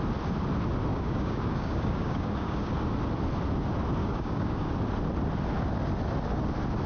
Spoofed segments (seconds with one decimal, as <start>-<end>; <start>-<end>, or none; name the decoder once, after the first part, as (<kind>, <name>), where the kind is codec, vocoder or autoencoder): 0.9-2.7 (codec, DAC); 4.0-4.7